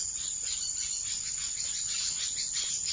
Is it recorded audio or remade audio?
recorded